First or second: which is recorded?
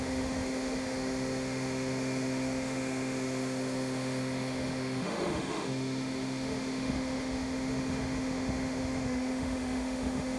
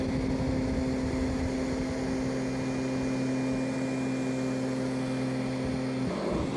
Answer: second